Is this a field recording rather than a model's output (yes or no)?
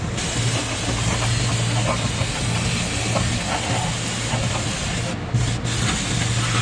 yes